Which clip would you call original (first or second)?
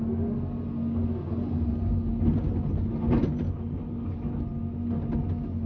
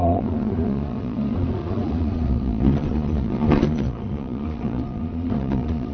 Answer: first